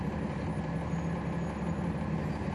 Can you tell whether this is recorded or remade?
recorded